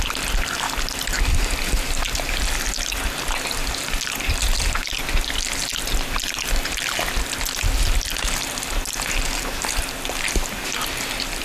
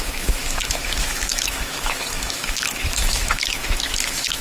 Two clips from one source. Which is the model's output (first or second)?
second